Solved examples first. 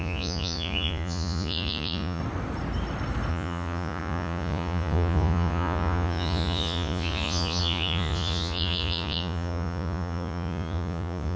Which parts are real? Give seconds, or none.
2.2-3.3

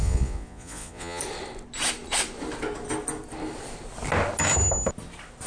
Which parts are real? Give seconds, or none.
1.2-5.5

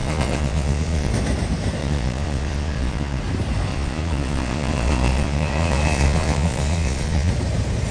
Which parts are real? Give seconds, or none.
1.1-1.8; 3.2-3.7; 7.3-7.9

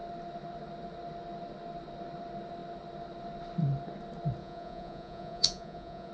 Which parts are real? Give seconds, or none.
0.0-4.4

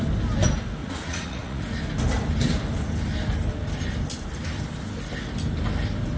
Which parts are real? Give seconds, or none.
0.0-0.8; 1.6-6.2

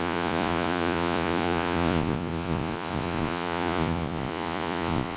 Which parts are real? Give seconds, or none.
none